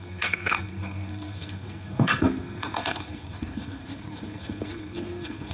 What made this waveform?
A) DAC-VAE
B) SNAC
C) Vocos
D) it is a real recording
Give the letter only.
B